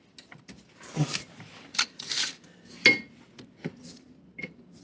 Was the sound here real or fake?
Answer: real